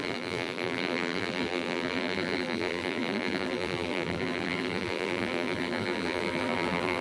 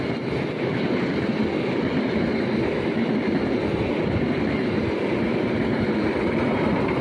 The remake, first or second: first